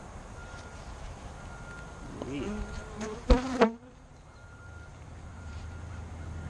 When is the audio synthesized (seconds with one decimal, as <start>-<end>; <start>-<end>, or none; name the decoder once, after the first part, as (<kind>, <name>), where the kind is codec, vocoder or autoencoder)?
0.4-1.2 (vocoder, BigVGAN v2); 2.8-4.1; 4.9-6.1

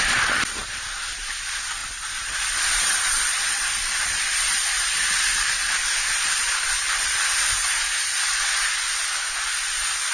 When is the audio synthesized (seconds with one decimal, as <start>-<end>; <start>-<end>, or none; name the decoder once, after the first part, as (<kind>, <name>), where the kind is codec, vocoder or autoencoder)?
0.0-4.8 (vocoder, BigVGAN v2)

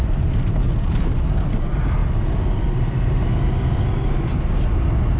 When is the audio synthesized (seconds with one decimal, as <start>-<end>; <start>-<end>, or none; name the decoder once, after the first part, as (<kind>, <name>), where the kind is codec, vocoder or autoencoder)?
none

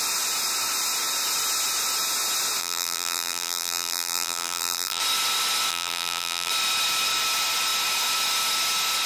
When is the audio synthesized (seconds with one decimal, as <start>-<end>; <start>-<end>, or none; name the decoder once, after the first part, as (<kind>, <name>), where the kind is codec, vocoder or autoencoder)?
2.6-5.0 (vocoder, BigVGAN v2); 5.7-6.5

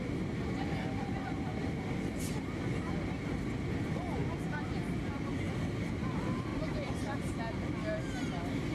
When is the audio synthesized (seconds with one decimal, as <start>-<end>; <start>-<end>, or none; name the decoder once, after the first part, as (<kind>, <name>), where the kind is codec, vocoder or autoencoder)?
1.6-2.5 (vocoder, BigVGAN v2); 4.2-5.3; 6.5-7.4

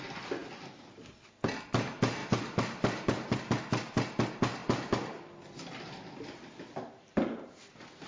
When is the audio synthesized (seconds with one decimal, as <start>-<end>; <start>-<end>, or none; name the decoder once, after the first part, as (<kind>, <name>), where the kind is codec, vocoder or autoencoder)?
2.2-3.5 (vocoder, BigVGAN v2); 4.6-5.2

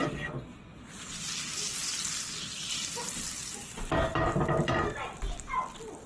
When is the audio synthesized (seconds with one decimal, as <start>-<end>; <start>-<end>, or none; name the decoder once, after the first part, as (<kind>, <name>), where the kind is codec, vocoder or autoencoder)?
none

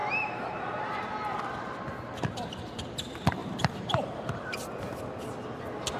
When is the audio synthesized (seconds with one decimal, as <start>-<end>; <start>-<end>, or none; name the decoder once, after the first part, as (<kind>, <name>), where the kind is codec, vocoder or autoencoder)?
0.0-1.1 (vocoder, BigVGAN v2); 3.4-4.6